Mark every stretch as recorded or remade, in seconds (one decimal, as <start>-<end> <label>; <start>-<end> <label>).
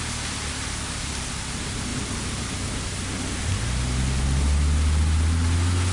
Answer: 0.0-5.9 recorded